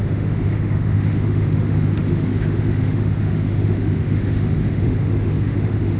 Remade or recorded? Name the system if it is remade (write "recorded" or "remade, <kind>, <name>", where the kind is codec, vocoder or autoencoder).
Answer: remade, autoencoder, DAC-VAE